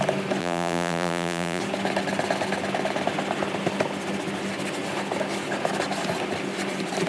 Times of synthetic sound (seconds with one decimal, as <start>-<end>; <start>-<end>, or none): 0.4-1.6